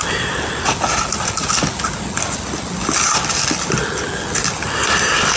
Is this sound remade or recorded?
recorded